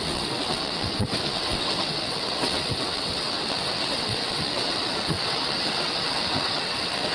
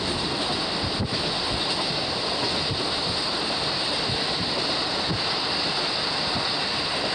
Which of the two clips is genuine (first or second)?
second